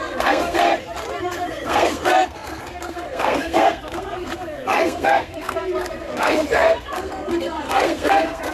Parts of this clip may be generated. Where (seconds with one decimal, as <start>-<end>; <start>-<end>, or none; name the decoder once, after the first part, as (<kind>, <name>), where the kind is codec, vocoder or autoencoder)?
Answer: 0.0-0.7 (codec, SNAC); 1.2-8.5